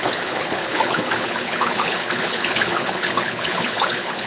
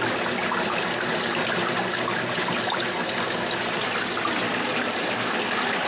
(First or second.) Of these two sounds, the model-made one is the first